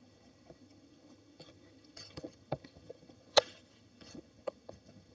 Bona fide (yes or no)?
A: no